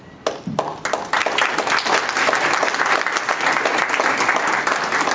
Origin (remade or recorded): recorded